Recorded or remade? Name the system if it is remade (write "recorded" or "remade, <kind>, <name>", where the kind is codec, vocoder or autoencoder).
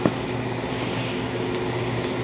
recorded